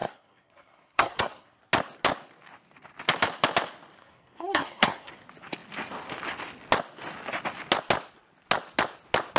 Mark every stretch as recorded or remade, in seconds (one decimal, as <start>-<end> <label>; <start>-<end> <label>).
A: 0.0-1.6 remade; 1.6-4.0 recorded; 4.0-5.1 remade; 5.1-9.4 recorded